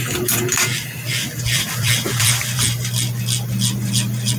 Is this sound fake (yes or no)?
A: yes